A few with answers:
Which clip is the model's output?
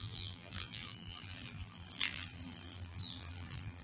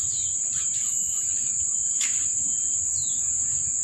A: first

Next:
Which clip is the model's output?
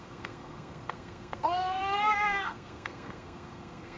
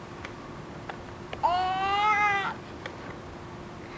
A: first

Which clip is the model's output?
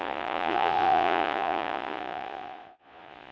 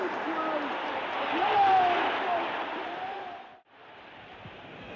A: first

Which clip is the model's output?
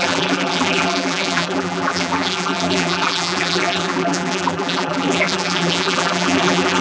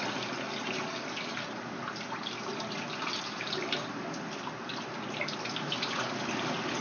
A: first